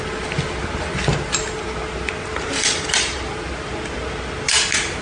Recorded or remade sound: recorded